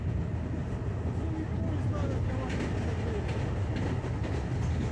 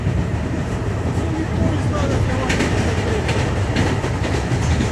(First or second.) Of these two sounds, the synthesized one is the second